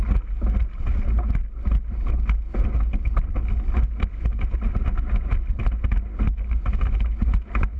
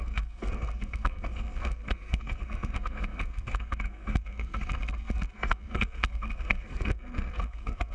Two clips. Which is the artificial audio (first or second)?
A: second